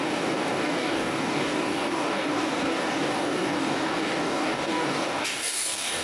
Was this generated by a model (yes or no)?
yes